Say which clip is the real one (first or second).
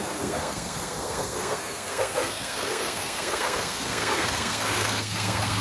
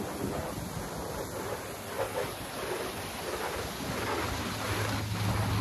second